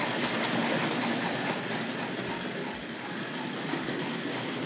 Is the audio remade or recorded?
recorded